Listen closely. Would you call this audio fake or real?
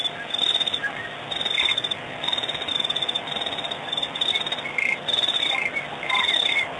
real